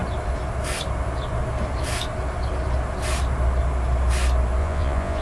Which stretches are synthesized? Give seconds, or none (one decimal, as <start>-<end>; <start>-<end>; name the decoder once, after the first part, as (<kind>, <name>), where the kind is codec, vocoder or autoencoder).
4.6-5.2 (vocoder, Vocos)